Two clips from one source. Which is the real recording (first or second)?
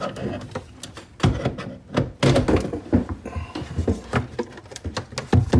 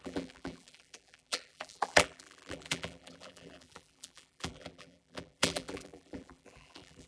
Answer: first